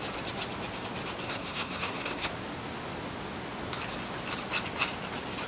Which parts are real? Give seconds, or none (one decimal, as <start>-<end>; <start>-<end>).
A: 0.0-1.2; 2.3-5.5